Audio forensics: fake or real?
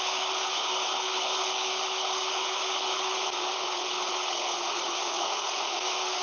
fake